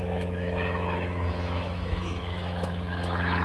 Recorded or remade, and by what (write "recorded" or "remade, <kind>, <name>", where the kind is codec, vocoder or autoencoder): remade, autoencoder, DAC-VAE